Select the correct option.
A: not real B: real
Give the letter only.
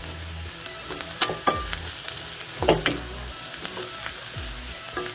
B